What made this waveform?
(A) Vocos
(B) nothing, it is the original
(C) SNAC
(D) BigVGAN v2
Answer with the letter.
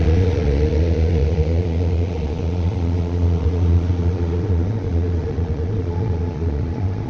A